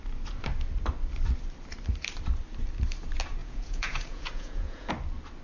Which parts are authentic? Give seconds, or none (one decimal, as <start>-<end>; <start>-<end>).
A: 0.0-3.4; 4.9-5.4